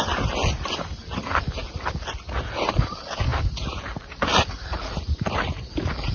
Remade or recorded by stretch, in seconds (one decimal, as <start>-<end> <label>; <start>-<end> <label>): 0.0-6.1 recorded